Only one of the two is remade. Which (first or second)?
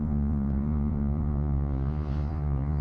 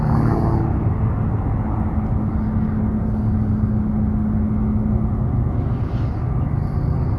first